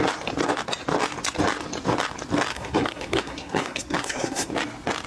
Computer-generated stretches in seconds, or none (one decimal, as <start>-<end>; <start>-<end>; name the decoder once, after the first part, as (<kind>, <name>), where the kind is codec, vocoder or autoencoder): 2.5-4.5 (codec, SNAC)